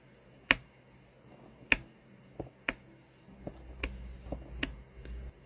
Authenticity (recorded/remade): recorded